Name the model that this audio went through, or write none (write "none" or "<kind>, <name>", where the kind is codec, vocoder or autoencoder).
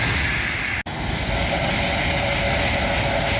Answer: none